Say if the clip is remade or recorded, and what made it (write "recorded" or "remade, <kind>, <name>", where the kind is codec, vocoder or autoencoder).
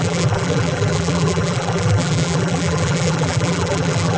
remade, vocoder, BigVGAN v2